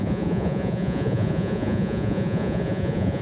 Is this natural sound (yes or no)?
no